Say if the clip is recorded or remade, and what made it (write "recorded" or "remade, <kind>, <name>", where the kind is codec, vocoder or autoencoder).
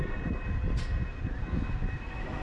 recorded